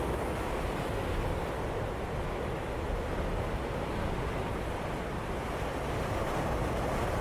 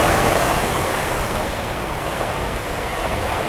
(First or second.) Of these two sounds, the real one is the first